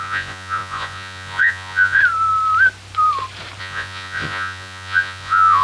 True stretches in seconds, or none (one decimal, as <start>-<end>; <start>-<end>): 2.0-3.6